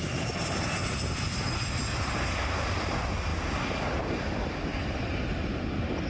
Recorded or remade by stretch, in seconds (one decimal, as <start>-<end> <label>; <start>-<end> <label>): 0.0-6.1 recorded